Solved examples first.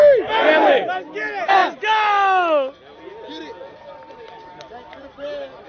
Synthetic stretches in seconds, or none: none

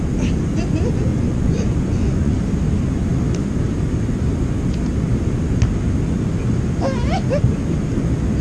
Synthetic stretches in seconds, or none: 1.1-2.4 (vocoder, Vocos)